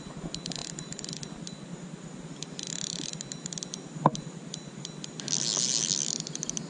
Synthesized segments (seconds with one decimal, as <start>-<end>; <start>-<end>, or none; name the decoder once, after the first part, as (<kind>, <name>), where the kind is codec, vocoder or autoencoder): none